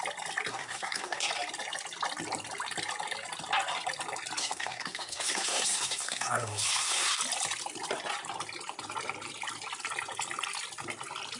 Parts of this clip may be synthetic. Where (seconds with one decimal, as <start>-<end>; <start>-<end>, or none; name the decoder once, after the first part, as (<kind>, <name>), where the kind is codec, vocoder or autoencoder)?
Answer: 0.5-1.3 (codec, SNAC); 4.4-7.2